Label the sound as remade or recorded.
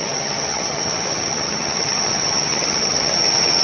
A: remade